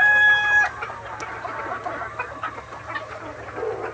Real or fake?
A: real